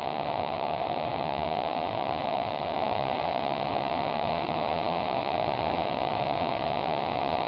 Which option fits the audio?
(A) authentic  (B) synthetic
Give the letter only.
B